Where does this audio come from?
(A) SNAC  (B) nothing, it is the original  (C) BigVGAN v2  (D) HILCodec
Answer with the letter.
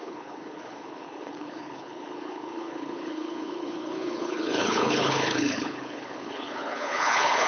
D